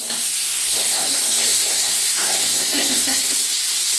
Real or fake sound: fake